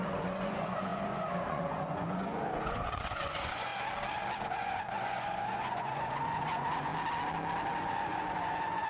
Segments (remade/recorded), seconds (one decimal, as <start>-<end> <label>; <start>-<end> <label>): 0.0-3.7 remade; 3.7-4.4 recorded; 4.4-6.9 remade; 6.9-7.8 recorded; 7.8-8.9 remade